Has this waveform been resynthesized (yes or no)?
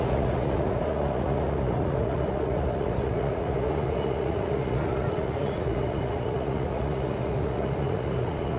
yes